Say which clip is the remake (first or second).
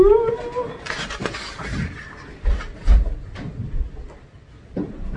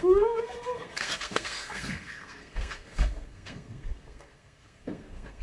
second